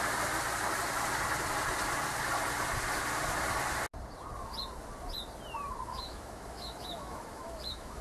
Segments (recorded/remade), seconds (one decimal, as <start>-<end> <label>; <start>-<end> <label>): 0.0-5.9 recorded; 5.9-8.0 remade